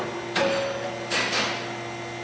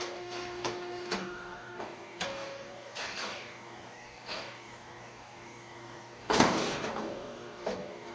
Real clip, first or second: first